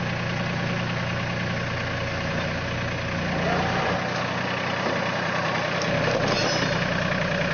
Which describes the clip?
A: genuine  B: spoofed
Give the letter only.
A